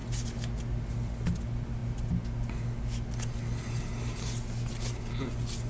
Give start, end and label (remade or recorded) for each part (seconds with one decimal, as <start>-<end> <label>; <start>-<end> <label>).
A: 0.0-5.7 recorded